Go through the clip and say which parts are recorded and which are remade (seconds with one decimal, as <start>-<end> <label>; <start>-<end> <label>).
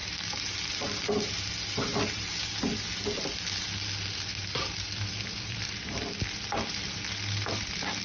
0.0-4.3 recorded; 4.3-7.0 remade; 7.0-8.0 recorded